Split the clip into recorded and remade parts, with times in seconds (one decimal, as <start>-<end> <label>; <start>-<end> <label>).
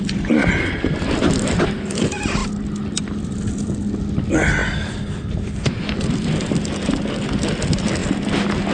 0.0-1.2 recorded; 1.2-2.0 remade; 2.0-4.6 recorded; 4.6-7.1 remade; 7.1-8.0 recorded; 8.0-8.7 remade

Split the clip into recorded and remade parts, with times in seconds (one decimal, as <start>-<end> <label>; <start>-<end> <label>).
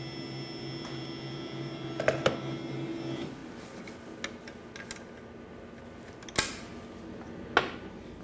0.0-8.2 recorded